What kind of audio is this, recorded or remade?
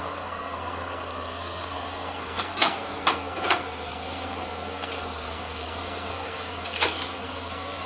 remade